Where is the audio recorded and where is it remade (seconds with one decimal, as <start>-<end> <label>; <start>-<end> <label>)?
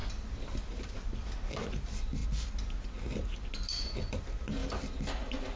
0.0-2.2 remade; 2.2-4.1 recorded; 4.1-4.6 remade; 4.6-5.6 recorded